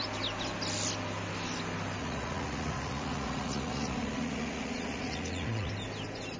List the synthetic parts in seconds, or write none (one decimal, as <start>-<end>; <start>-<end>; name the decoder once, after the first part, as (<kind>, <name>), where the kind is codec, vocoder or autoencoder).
2.0-5.7 (vocoder, Vocos)